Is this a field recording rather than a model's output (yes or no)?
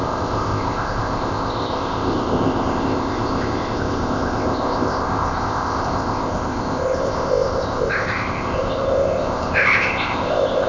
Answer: no